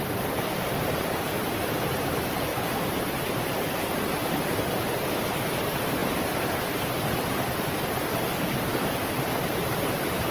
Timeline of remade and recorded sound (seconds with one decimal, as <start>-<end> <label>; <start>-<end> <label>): 0.0-10.3 remade